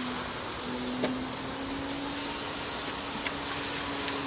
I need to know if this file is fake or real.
real